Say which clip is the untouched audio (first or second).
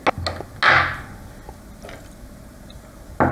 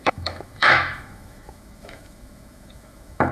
first